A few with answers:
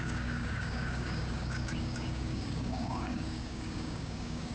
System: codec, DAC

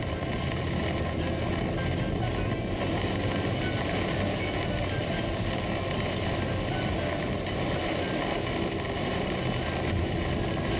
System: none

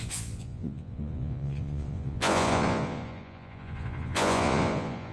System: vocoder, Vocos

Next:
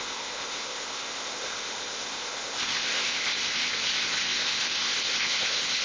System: codec, ZipCodec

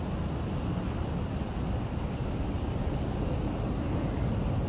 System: none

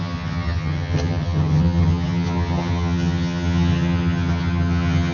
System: vocoder, HiFi-GAN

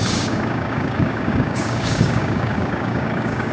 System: codec, DAC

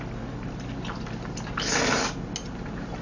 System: none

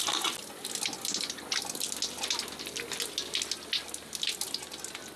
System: none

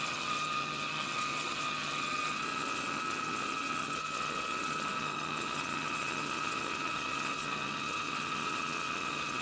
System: vocoder, HiFi-GAN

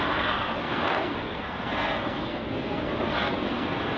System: codec, SNAC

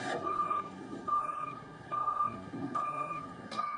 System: codec, SNAC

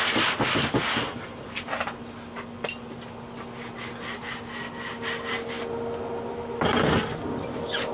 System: none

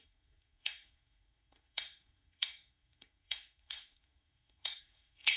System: codec, SNAC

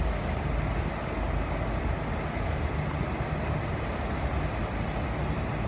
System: none